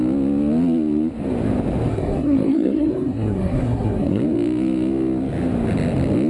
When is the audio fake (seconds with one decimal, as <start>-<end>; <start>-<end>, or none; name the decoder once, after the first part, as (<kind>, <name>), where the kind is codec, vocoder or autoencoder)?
1.9-4.2 (codec, SNAC)